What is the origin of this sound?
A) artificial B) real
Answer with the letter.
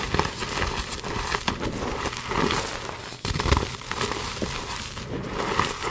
B